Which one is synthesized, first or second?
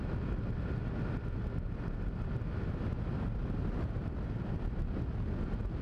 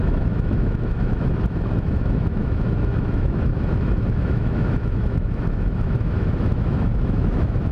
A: second